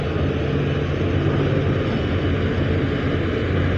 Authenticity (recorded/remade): recorded